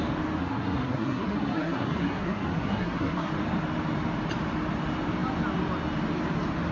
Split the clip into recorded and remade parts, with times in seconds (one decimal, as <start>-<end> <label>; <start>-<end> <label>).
0.0-0.4 recorded; 0.4-3.3 remade; 3.3-6.7 recorded